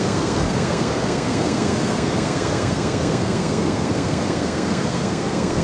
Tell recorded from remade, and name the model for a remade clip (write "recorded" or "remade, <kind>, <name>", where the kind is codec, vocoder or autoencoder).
remade, codec, SNAC